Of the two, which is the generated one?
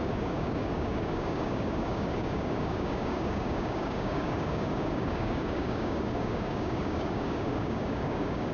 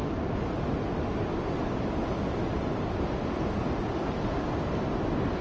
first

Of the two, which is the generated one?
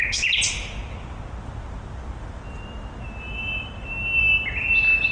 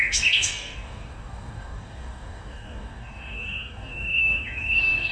second